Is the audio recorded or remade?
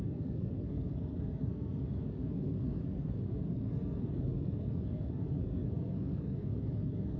remade